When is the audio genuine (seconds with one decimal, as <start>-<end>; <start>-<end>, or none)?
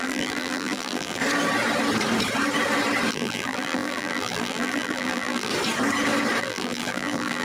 1.2-3.1; 5.5-6.4